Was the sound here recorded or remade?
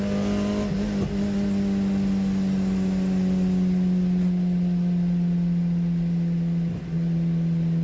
recorded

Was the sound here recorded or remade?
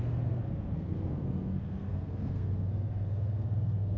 remade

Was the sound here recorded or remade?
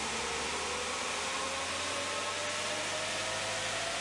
recorded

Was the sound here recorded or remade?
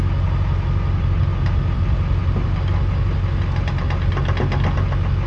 recorded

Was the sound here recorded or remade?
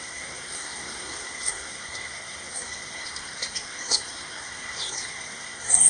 remade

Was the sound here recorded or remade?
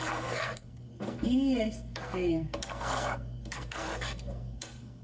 remade